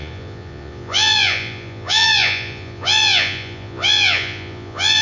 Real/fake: fake